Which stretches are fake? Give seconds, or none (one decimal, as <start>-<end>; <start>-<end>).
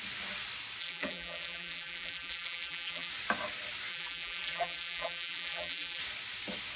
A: 0.8-3.1; 3.9-6.0